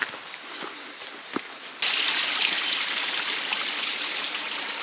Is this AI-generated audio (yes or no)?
no